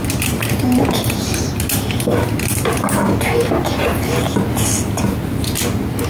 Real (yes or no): yes